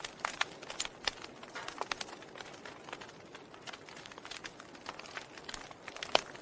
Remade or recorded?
recorded